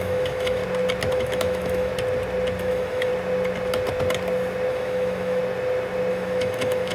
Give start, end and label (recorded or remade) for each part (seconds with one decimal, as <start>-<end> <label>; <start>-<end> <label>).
0.0-0.6 remade; 0.6-1.1 recorded; 1.1-1.9 remade; 1.9-2.6 recorded; 2.6-3.1 remade; 3.1-4.7 recorded; 4.7-5.4 remade; 5.4-6.1 recorded; 6.1-6.9 remade